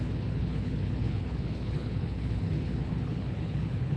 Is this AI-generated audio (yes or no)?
yes